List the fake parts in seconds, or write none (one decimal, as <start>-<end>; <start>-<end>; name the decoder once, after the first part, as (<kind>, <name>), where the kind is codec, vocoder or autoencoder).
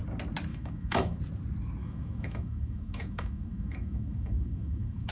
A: 0.5-1.2 (autoencoder, DAC-VAE); 1.8-5.1